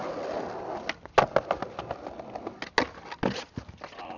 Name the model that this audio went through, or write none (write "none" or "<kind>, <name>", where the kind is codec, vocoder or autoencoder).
none